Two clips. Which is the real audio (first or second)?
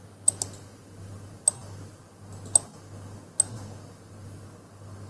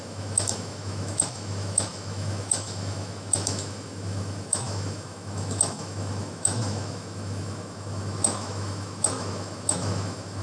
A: first